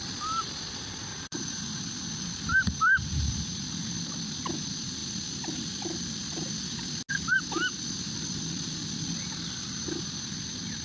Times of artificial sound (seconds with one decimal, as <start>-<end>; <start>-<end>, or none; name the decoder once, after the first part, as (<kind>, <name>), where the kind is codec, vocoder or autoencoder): 1.1-1.8 (vocoder, Vocos)